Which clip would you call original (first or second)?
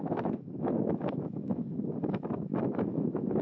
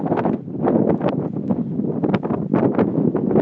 second